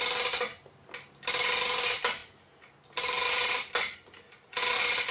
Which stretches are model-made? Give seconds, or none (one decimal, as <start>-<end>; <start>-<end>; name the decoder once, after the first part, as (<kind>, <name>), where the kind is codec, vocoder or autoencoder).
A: none